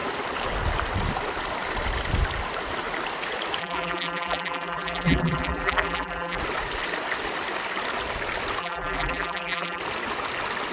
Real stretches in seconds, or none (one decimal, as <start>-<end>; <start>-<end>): 0.0-3.6; 6.4-8.6; 9.8-10.7